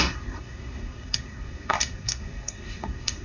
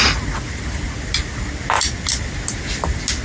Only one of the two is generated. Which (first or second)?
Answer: first